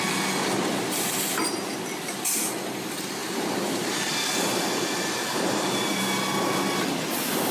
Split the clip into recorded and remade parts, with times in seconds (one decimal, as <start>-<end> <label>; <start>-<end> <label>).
0.0-3.2 recorded; 3.2-6.0 remade; 6.0-7.5 recorded